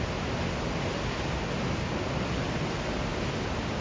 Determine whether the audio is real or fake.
real